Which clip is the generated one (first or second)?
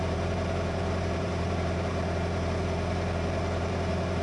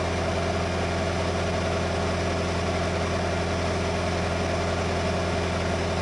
first